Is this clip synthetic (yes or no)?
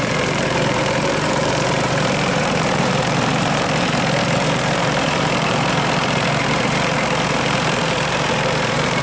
yes